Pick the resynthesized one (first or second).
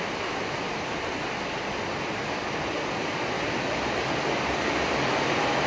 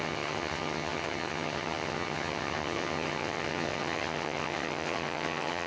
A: second